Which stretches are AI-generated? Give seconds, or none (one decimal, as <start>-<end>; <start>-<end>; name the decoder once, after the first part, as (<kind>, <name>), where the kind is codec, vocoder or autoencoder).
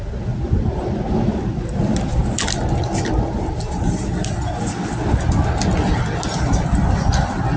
none